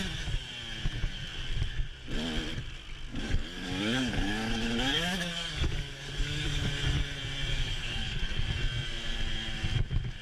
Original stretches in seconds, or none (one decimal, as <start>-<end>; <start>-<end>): 0.0-3.1; 6.7-7.5; 8.2-10.2